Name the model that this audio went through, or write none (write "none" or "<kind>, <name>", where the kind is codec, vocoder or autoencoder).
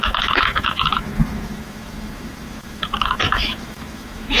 autoencoder, DAC-VAE